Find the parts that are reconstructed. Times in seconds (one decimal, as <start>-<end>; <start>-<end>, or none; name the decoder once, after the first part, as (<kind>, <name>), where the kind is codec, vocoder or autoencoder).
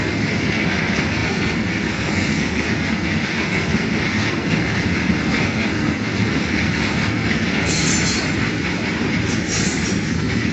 0.0-7.9 (codec, SNAC); 10.1-10.5